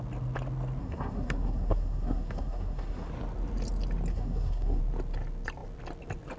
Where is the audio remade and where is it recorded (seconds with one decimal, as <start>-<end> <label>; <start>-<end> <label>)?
0.0-0.8 recorded; 0.8-3.1 remade; 3.1-4.1 recorded; 4.1-4.8 remade; 4.8-6.4 recorded